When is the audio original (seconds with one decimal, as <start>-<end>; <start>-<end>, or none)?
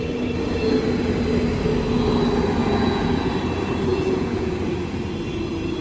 0.0-2.6; 3.3-3.9; 4.5-5.8